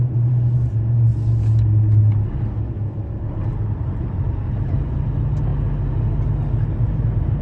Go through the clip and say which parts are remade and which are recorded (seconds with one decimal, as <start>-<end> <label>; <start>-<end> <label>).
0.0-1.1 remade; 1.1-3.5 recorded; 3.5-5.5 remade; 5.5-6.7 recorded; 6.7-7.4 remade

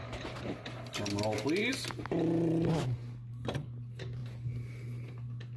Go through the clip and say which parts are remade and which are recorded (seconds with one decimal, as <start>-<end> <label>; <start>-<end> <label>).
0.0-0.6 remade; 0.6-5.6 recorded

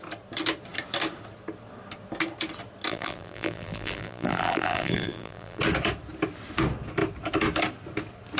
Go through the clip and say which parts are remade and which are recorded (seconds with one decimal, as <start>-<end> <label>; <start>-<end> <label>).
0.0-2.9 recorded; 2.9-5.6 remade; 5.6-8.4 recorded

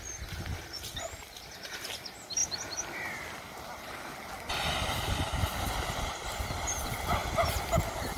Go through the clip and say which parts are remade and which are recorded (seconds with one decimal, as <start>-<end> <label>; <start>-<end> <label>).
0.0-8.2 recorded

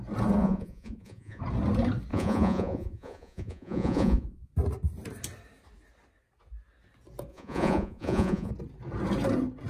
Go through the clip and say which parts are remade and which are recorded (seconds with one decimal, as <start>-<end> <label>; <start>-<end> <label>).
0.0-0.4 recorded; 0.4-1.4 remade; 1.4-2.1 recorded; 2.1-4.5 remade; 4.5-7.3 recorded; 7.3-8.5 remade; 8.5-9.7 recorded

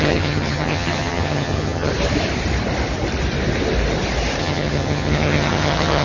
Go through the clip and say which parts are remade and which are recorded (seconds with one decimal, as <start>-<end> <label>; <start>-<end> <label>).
0.0-1.9 remade; 1.9-4.4 recorded; 4.4-6.0 remade

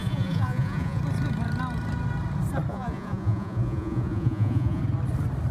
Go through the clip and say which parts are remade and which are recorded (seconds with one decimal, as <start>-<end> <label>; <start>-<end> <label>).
0.0-1.0 remade; 1.0-2.7 recorded; 2.7-4.8 remade; 4.8-5.5 recorded